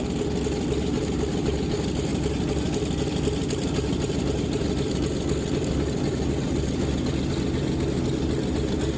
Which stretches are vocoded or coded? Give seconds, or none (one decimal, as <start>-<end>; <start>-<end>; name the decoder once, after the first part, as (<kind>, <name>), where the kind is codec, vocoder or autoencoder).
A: none